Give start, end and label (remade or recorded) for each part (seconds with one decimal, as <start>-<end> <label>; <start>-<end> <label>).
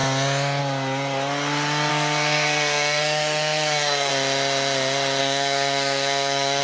0.0-1.9 recorded; 1.9-4.1 remade; 4.1-5.2 recorded; 5.2-6.6 remade